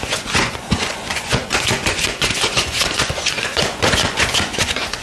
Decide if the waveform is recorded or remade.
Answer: remade